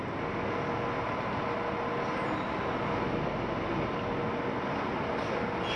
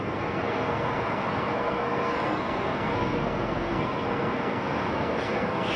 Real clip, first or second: first